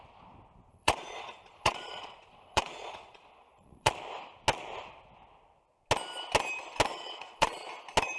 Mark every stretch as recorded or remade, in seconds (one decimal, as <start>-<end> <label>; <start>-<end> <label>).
0.0-0.7 recorded; 0.7-3.9 remade; 3.9-6.9 recorded; 6.9-7.7 remade; 7.7-8.2 recorded